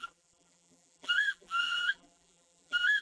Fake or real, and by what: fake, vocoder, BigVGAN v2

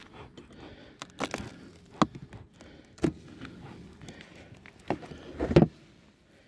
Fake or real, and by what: real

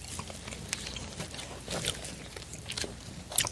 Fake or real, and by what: real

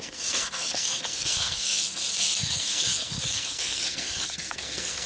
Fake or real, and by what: fake, codec, SNAC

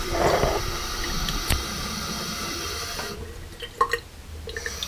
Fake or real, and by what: real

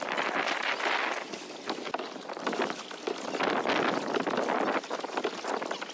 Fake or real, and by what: real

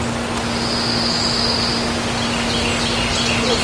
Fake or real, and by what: real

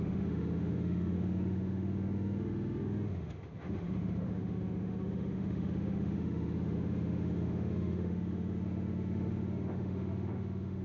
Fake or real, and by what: fake, autoencoder, DAC-VAE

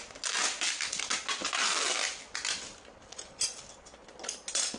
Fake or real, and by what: real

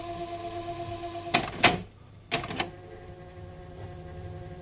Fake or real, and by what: real